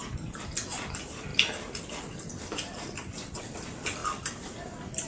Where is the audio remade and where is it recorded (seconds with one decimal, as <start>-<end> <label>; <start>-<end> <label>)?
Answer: 0.0-5.1 remade